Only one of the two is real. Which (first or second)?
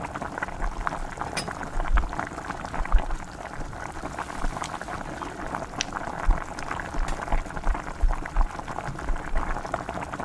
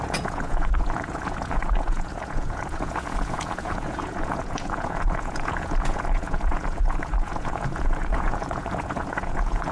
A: first